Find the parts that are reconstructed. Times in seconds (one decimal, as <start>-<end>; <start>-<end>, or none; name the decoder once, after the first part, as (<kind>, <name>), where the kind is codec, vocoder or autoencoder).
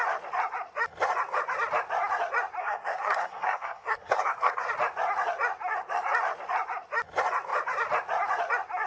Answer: 2.6-4.7 (codec, SNAC)